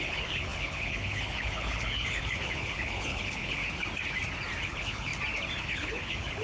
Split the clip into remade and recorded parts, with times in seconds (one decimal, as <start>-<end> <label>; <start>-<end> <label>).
0.0-3.6 remade; 3.6-4.6 recorded; 4.6-5.1 remade; 5.1-5.6 recorded; 5.6-6.4 remade